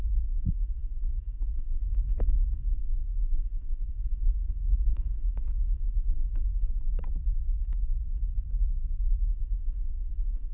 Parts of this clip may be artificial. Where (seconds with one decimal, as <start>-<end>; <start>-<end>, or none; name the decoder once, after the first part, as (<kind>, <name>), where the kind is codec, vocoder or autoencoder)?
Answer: 0.0-6.5 (autoencoder, DAC-VAE); 9.2-10.5